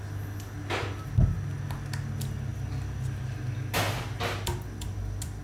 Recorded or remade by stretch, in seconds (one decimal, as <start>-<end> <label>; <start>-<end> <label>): 0.0-5.4 recorded